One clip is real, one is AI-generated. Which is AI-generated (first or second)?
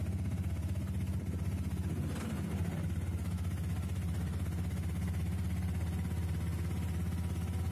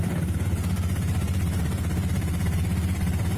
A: second